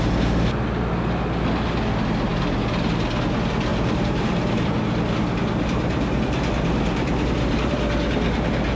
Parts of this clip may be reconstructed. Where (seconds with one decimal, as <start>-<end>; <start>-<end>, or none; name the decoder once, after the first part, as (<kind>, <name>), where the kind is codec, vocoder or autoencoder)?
3.7-7.7 (vocoder, BigVGAN v2)